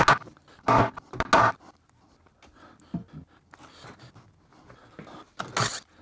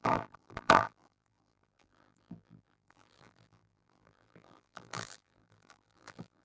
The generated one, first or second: second